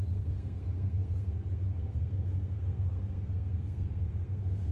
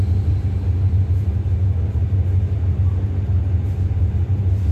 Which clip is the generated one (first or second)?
first